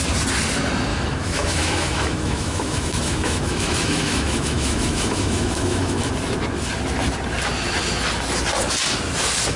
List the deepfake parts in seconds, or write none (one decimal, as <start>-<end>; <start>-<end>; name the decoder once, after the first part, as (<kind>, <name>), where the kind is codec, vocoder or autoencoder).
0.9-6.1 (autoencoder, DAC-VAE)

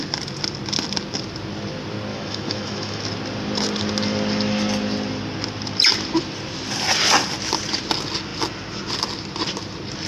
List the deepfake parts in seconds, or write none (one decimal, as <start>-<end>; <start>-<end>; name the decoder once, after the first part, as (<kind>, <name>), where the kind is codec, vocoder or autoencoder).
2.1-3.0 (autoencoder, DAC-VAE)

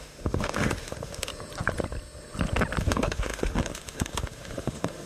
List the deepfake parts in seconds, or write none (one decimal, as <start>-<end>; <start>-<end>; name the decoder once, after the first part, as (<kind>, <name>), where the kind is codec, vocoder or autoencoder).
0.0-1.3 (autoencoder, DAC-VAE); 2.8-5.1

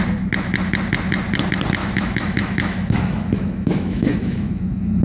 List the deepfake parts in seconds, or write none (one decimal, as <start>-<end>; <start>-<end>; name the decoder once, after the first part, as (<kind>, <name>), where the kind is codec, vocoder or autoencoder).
1.8-5.0 (autoencoder, DAC-VAE)